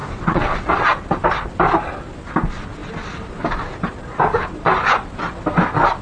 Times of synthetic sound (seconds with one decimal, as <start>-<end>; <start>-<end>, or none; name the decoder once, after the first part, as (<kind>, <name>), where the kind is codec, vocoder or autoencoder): 0.0-0.7 (vocoder, WaveNeXt)